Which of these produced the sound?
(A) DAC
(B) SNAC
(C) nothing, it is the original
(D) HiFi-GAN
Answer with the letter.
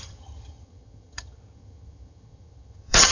D